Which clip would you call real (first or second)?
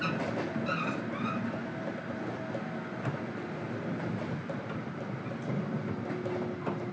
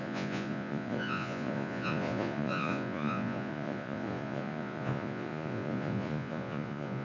first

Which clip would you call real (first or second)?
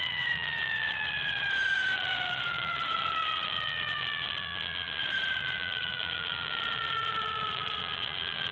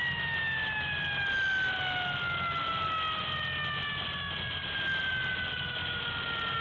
second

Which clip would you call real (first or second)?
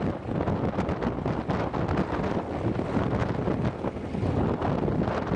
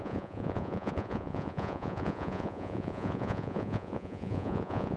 first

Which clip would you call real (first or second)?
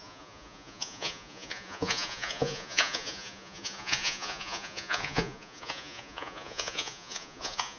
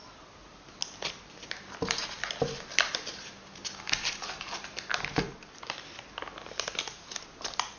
second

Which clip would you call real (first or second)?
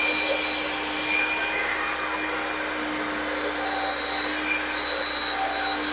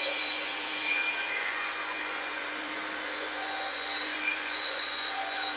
first